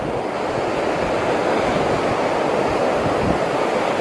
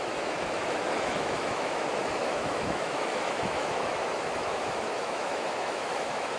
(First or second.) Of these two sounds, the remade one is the second